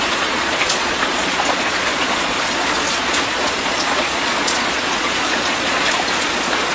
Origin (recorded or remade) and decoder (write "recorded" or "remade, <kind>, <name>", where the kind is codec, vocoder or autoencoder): remade, vocoder, Vocos